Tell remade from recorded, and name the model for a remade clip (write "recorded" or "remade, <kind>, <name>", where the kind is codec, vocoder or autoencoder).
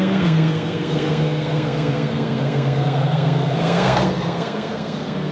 remade, codec, SNAC